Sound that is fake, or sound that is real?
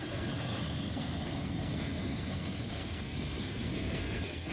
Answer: fake